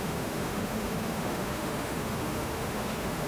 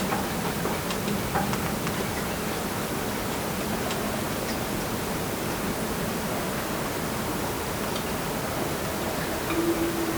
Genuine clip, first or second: second